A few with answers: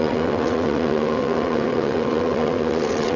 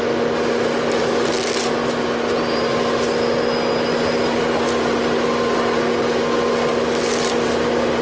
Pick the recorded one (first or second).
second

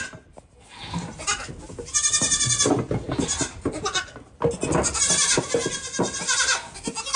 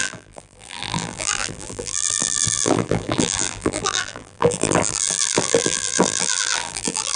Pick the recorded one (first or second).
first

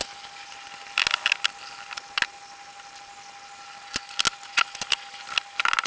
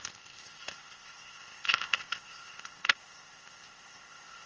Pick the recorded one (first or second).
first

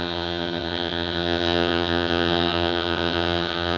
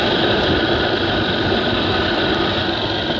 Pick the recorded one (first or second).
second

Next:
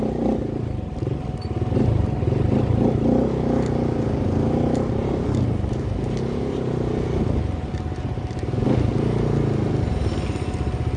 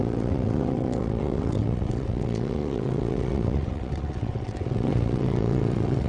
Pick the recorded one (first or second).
first